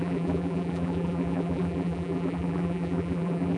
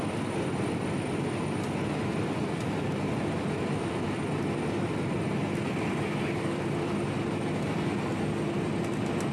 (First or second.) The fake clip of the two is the first